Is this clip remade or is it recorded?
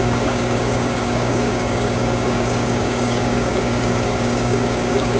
remade